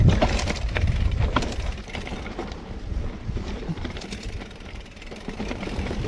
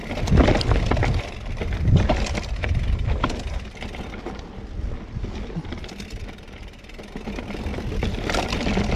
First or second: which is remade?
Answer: first